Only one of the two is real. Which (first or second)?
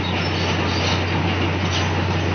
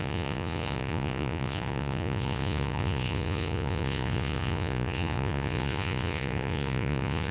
first